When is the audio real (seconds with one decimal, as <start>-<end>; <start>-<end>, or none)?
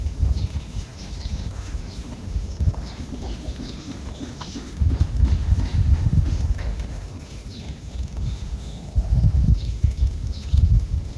none